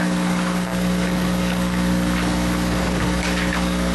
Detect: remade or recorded remade